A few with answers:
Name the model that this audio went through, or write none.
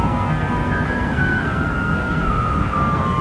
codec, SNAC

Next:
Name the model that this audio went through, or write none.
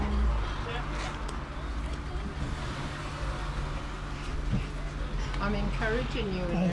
none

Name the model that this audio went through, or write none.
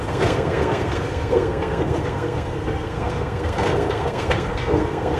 codec, SNAC